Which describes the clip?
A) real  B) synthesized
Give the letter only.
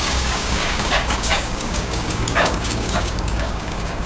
B